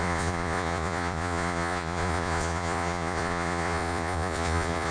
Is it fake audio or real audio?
fake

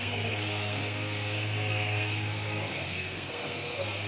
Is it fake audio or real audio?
fake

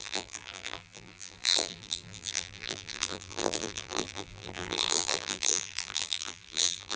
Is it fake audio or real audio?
fake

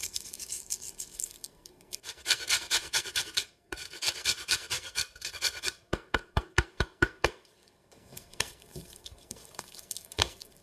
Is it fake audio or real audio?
fake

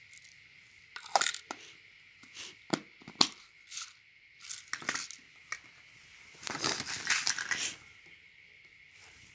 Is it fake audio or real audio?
fake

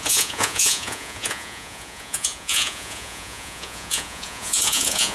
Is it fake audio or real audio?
fake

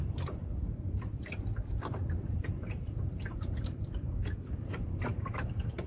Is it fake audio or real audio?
real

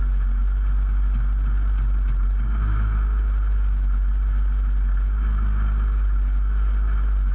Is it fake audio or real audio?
real